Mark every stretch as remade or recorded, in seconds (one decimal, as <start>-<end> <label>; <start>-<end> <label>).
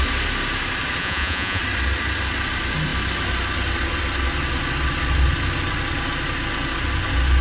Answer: 0.0-1.0 recorded; 1.0-1.6 remade; 1.6-7.4 recorded